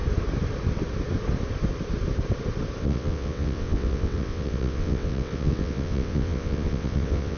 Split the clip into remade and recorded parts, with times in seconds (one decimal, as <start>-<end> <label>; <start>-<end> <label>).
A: 0.0-2.8 recorded; 2.8-7.4 remade